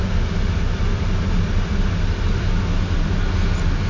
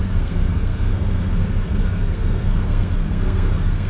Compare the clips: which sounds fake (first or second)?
second